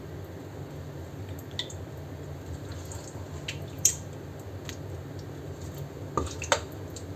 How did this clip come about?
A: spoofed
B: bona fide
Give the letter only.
B